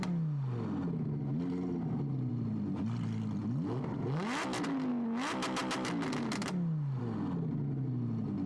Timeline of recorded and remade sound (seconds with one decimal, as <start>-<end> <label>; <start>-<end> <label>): 0.0-8.5 recorded